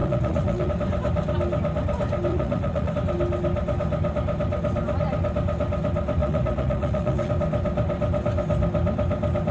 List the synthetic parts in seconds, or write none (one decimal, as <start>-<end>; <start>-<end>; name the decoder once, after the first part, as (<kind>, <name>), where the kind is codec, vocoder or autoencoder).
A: 0.0-0.7 (vocoder, Vocos); 2.3-2.9; 6.2-7.3